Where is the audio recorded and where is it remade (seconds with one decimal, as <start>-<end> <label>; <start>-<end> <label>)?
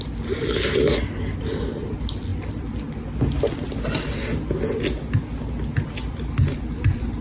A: 0.0-7.2 recorded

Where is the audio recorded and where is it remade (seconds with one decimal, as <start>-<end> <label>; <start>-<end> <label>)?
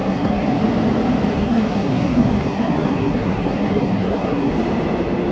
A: 0.0-0.6 remade; 0.6-1.3 recorded; 1.3-4.5 remade; 4.5-5.3 recorded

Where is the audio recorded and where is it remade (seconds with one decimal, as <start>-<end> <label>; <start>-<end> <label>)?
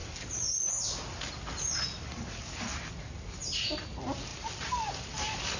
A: 0.0-5.6 recorded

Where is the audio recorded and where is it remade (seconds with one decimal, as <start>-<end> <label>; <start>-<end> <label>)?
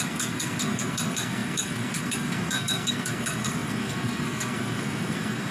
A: 0.0-5.5 remade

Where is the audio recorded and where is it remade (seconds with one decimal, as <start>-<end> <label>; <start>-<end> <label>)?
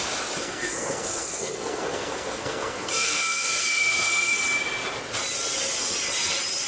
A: 0.0-0.4 recorded; 0.4-4.4 remade; 4.4-6.7 recorded